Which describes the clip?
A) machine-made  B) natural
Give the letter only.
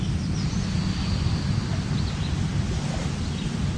B